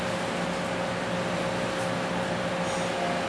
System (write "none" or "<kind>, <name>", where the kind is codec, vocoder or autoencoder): none